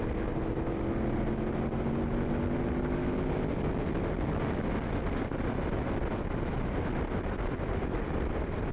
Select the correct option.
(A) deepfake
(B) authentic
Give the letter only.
B